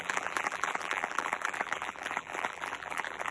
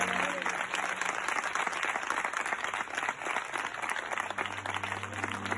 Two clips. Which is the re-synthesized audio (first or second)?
first